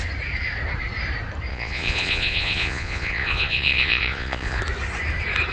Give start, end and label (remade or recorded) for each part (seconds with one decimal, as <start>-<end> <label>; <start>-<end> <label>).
0.0-1.5 recorded; 1.5-4.6 remade; 4.6-5.5 recorded